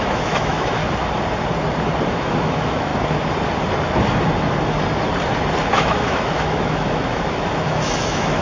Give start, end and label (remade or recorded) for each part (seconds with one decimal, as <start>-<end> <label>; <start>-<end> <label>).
0.0-0.8 remade; 0.8-2.1 recorded; 2.1-2.9 remade; 2.9-5.7 recorded; 5.7-8.4 remade